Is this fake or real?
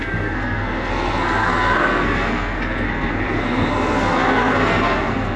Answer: fake